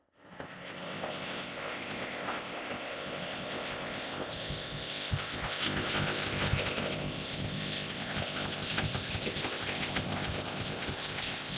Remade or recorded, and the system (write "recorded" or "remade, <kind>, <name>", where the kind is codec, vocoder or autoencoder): remade, codec, ZipCodec